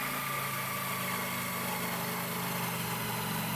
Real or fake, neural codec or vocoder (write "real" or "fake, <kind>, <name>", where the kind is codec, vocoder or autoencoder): real